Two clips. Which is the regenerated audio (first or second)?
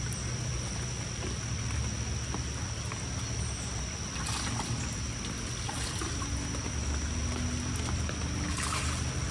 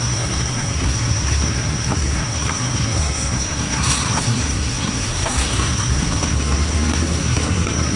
second